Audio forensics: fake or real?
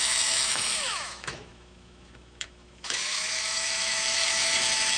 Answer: fake